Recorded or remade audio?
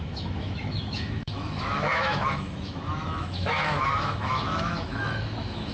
remade